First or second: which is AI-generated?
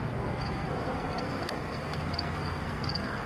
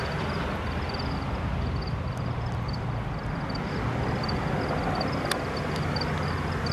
first